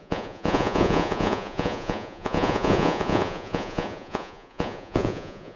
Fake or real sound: fake